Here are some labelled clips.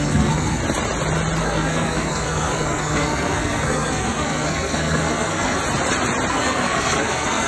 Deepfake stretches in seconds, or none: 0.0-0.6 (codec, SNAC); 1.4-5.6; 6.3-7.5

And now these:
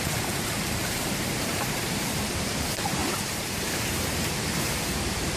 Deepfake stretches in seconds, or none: 0.0-5.4 (vocoder, BigVGAN v2)

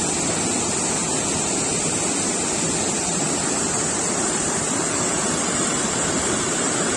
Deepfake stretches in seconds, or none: 3.7-7.0 (vocoder, BigVGAN v2)